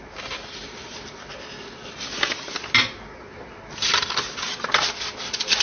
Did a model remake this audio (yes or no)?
no